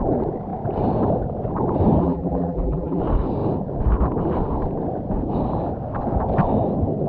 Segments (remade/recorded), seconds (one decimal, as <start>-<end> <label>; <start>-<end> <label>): 0.0-2.0 recorded; 2.0-3.0 remade; 3.0-7.1 recorded